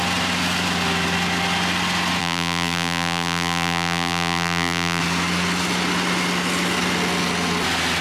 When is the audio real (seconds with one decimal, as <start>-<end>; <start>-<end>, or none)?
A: 0.0-2.2; 5.0-8.0